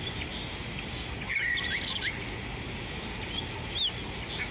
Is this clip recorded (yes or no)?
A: yes